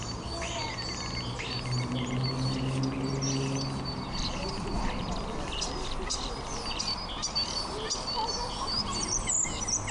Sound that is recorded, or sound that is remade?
recorded